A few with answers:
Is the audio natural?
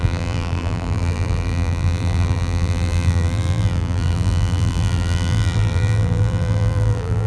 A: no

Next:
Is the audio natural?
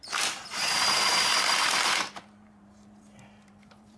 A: no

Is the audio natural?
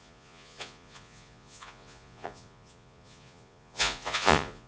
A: no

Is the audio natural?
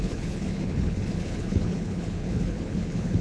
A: no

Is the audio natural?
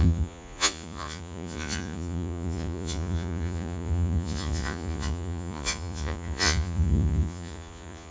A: no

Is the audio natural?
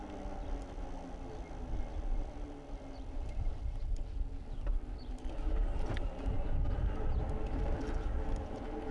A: yes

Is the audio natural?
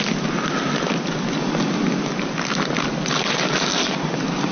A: yes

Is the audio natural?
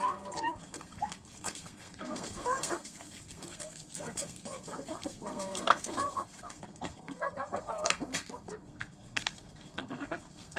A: no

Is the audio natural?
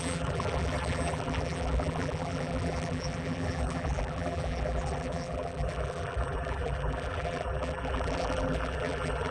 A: no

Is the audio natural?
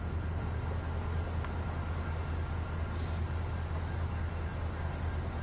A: yes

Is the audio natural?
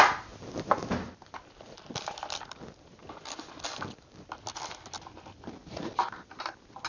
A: yes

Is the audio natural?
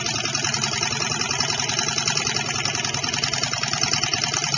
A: yes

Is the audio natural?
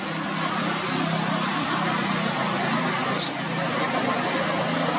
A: yes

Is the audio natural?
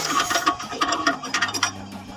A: no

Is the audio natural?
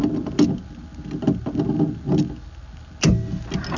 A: yes